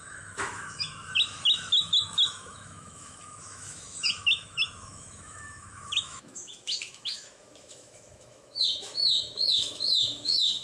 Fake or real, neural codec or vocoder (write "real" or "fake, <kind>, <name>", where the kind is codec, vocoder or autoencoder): fake, autoencoder, DAC-VAE